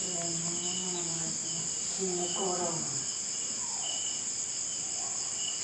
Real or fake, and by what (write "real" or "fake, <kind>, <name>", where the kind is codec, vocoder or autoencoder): real